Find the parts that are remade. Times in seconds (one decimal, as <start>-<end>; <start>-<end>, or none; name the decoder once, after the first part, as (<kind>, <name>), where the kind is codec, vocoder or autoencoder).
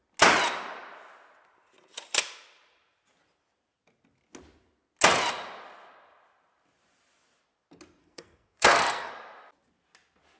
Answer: 8.0-9.1 (codec, SNAC)